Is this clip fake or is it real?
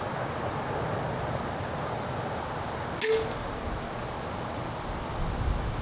real